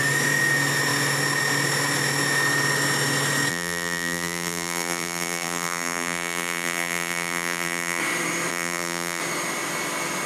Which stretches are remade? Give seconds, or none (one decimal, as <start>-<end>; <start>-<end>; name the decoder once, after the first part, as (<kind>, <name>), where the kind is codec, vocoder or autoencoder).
3.5-8.0 (vocoder, BigVGAN v2); 8.5-9.2